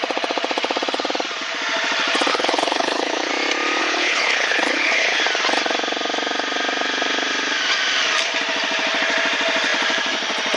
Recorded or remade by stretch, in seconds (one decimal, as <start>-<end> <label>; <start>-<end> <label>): 0.0-2.3 recorded; 2.3-3.3 remade; 3.3-3.8 recorded; 3.8-5.2 remade; 5.2-10.6 recorded